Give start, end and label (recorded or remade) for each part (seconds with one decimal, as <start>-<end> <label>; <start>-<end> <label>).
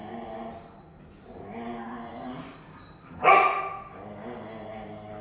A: 0.0-5.2 recorded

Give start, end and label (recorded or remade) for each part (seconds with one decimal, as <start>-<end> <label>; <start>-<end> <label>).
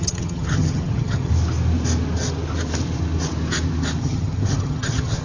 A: 0.0-1.3 remade; 1.3-4.0 recorded; 4.0-5.2 remade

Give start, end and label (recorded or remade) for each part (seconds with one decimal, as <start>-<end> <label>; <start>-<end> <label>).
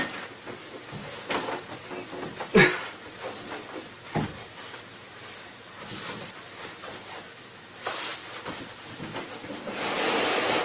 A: 0.0-10.6 recorded